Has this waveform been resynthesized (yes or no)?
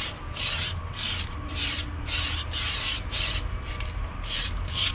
yes